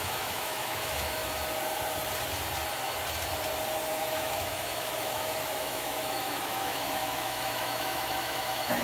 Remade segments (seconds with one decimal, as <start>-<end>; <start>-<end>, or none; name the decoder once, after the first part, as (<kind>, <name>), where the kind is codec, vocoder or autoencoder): 0.0-1.2 (autoencoder, DAC-VAE); 3.9-8.8